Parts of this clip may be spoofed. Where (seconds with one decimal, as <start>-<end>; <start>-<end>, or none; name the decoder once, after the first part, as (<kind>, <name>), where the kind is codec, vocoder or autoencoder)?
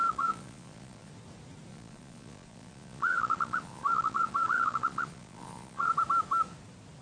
0.0-1.1 (vocoder, Vocos); 1.7-5.9